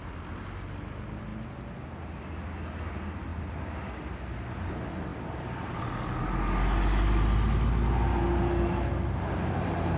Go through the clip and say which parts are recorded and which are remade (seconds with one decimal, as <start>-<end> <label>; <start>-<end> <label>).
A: 0.0-10.0 recorded